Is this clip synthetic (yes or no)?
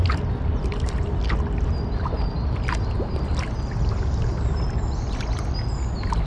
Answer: no